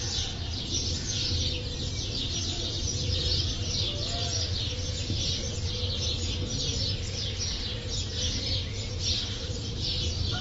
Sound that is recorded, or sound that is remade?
recorded